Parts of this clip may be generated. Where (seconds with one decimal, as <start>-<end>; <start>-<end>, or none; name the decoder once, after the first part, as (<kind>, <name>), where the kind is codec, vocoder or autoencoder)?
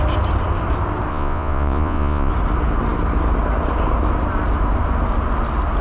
1.1-2.3 (vocoder, Vocos)